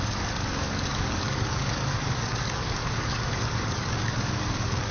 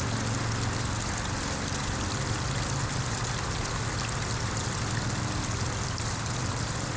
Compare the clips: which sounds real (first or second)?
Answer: second